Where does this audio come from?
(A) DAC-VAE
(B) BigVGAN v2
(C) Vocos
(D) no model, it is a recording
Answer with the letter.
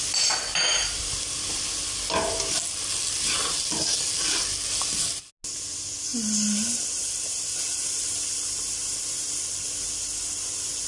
D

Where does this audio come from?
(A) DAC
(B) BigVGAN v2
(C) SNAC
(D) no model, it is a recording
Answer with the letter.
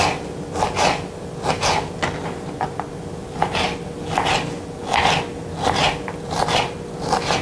D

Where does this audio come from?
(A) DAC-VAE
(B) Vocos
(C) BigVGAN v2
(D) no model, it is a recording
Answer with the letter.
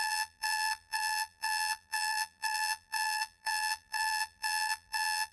C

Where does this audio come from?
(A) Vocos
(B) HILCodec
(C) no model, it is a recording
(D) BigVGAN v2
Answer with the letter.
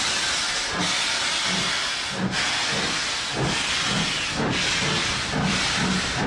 C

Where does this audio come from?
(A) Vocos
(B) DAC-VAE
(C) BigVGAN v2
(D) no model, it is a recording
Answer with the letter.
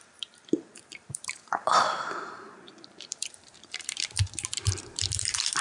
C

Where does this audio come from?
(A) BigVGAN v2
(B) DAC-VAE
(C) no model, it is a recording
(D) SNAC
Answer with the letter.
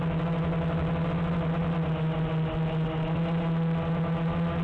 C